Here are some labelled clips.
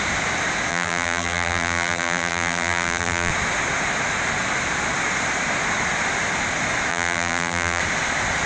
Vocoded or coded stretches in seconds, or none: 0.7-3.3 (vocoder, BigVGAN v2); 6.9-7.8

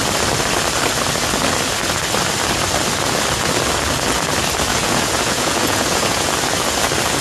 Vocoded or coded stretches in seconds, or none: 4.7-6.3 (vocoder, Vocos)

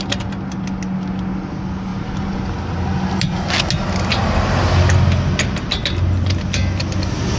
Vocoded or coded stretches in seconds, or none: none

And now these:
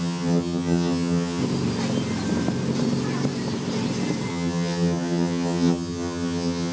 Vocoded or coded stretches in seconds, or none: 0.0-1.4 (vocoder, HiFi-GAN); 4.3-6.7